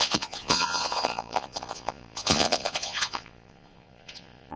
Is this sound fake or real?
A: fake